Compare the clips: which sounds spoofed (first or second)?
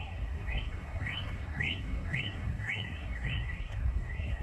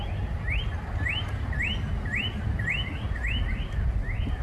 first